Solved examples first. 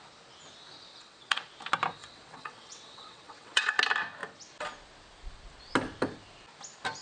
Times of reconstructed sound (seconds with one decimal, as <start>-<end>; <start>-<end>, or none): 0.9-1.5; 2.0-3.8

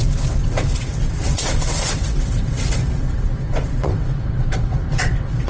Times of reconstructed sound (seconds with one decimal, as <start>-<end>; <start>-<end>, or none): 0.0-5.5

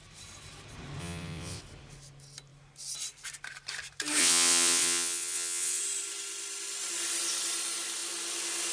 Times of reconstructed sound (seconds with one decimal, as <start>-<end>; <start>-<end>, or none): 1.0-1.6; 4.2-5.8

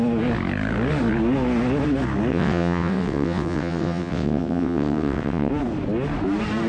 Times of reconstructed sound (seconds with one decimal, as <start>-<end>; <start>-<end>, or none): 2.3-5.5